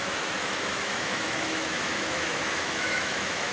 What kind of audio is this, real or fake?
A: fake